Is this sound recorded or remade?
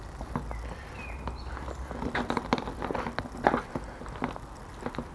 recorded